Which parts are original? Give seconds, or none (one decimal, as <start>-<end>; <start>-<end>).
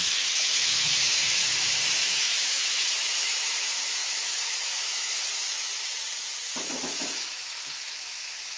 5.7-6.8